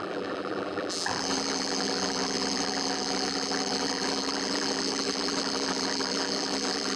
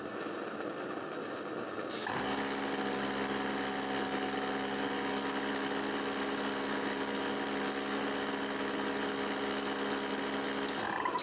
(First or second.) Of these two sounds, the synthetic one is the first